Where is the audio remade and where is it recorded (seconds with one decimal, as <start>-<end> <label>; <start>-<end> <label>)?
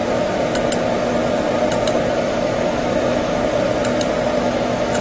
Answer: 0.0-2.1 recorded; 2.1-3.4 remade; 3.4-4.4 recorded; 4.4-5.0 remade